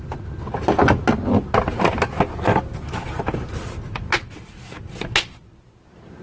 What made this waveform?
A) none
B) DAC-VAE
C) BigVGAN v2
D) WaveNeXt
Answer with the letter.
A